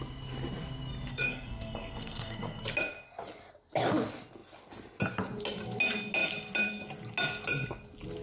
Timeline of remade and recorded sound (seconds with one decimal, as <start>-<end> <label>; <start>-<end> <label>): 0.0-1.1 recorded; 1.1-2.6 remade; 2.6-8.2 recorded